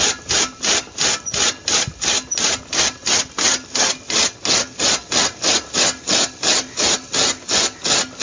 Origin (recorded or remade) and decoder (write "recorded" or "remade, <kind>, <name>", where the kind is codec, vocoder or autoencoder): recorded